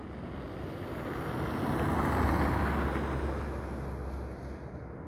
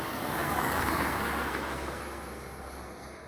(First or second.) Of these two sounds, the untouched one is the first